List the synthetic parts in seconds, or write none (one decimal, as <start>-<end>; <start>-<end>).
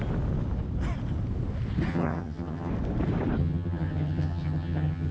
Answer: 1.9-2.7; 3.4-5.1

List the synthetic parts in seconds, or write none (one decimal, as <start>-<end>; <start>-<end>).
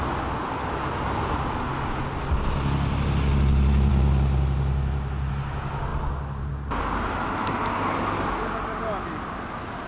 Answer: none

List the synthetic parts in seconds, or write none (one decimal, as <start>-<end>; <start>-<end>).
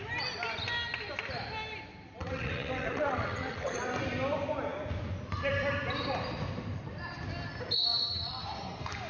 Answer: 2.2-3.8; 7.9-8.4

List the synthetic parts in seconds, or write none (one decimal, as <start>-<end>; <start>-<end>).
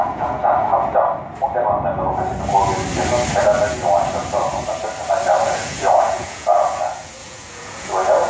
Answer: 0.0-0.4; 5.4-8.3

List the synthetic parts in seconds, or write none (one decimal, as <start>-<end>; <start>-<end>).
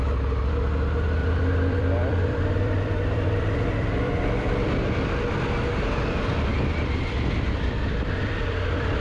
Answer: 1.2-5.2; 6.5-9.0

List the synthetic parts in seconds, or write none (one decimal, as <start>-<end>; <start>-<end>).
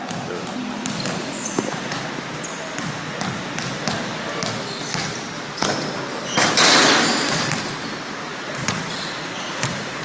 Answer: 1.2-2.0; 8.3-10.0